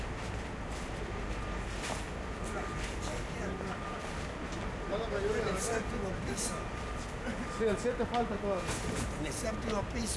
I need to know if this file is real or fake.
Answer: real